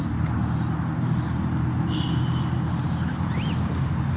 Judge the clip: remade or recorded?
recorded